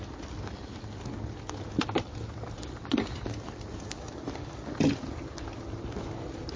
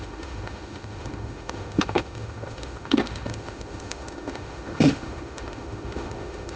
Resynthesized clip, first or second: second